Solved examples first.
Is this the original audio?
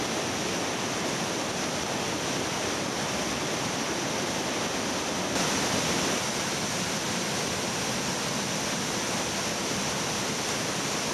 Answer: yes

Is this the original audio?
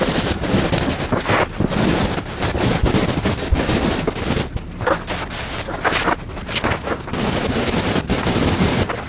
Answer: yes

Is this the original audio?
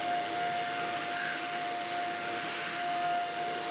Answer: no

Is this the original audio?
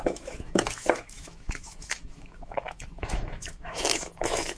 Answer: no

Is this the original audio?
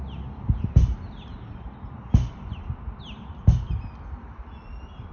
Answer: yes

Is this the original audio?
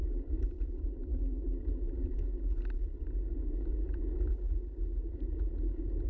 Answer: yes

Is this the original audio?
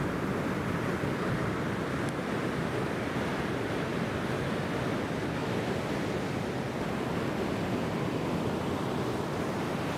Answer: yes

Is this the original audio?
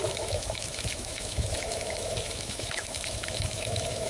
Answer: no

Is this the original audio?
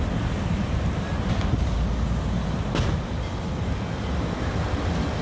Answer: yes